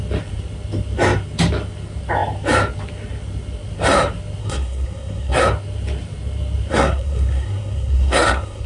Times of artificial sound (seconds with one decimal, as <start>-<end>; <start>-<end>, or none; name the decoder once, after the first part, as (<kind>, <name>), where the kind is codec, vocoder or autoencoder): 4.4-5.4 (codec, SNAC); 6.7-8.7